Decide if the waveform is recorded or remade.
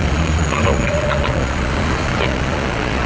remade